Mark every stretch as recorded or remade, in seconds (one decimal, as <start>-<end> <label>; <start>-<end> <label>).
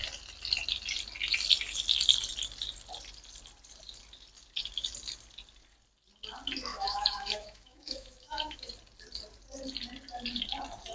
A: 0.0-6.7 recorded; 6.7-8.7 remade; 8.7-10.9 recorded